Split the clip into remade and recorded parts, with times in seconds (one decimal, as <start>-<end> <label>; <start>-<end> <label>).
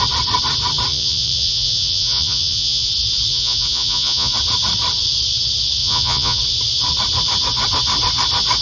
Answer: 0.0-0.9 recorded; 0.9-2.9 remade; 2.9-3.3 recorded; 3.3-4.3 remade; 4.3-5.8 recorded; 5.8-6.4 remade; 6.4-8.6 recorded